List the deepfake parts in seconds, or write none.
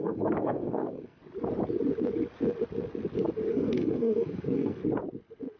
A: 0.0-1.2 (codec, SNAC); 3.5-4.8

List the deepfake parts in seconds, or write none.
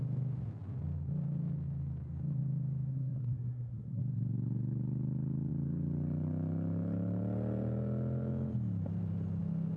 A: 2.9-4.0 (codec, SNAC)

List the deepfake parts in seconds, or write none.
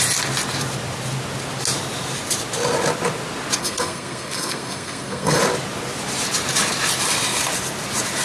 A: 3.6-5.4 (codec, SNAC)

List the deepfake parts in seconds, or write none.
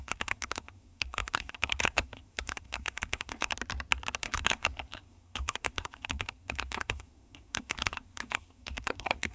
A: 0.0-3.5 (codec, SNAC); 4.2-9.3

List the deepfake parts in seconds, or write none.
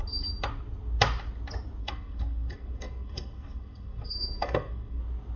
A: 1.8-5.0 (codec, SNAC)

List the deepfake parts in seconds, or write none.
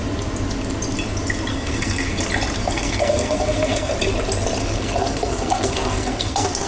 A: 1.5-2.2 (codec, SNAC); 2.6-3.9; 4.6-6.7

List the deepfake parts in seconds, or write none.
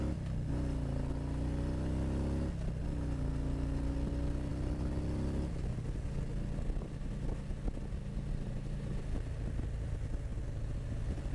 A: none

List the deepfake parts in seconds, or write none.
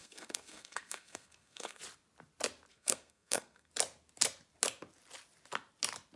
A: 0.0-1.8 (codec, SNAC); 2.7-3.7